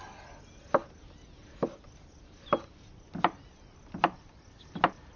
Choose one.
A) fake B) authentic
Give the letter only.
B